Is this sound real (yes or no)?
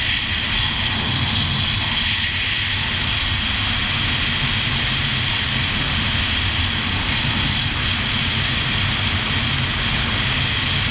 yes